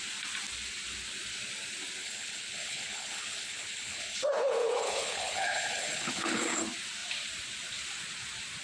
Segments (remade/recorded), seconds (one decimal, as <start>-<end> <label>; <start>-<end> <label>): 0.0-2.0 recorded; 2.0-6.6 remade; 6.6-8.6 recorded